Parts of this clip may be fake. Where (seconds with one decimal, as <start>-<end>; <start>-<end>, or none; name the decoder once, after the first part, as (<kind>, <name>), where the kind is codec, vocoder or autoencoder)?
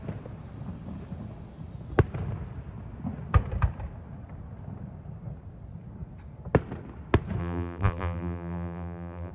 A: 7.4-9.3 (vocoder, BigVGAN v2)